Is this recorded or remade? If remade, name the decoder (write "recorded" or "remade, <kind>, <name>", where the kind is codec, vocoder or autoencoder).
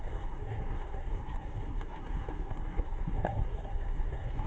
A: remade, codec, SNAC